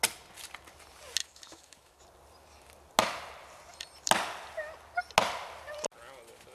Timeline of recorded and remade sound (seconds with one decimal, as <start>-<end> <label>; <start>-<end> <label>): 0.0-1.2 recorded; 1.2-2.0 remade; 2.0-6.5 recorded